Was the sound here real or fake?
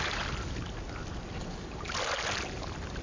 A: real